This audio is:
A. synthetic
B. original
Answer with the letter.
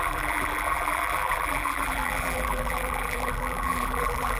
A